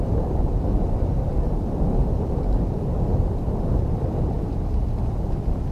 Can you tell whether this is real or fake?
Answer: real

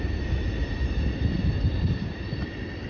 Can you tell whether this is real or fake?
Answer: real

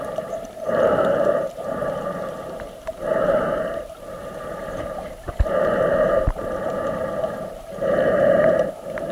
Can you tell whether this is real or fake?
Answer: fake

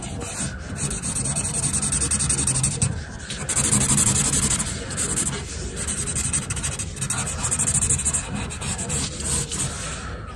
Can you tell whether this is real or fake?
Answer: real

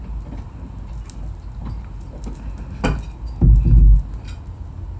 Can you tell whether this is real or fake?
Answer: real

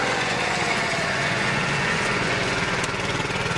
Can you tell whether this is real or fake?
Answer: fake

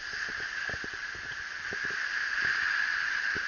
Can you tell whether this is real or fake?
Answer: real